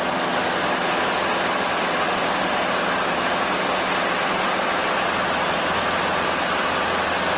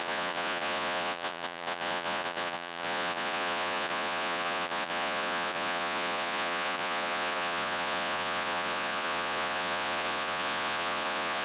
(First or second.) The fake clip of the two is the second